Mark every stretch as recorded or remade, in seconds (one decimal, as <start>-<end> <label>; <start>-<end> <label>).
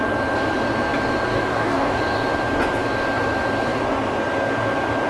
0.0-1.3 recorded; 1.3-2.0 remade; 2.0-5.1 recorded